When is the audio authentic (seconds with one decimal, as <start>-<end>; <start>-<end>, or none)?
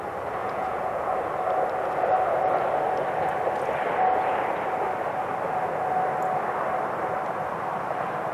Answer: 0.0-0.4; 1.1-8.3